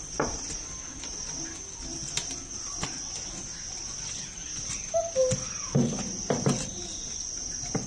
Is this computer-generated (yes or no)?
no